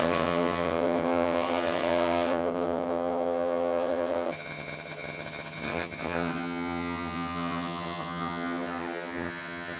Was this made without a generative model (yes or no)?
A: no